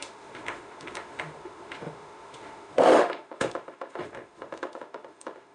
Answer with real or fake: fake